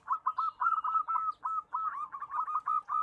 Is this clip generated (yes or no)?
no